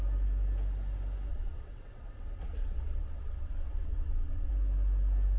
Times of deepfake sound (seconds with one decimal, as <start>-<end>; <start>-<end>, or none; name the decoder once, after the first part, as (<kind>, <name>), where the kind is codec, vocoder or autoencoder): 1.3-4.5 (vocoder, WaveNeXt)